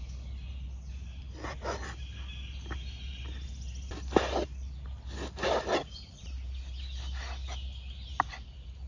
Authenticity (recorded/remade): recorded